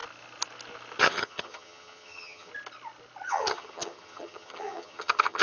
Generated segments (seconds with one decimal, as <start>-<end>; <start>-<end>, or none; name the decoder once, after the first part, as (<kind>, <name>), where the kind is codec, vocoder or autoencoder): 1.0-2.5 (vocoder, HiFi-GAN); 3.3-5.4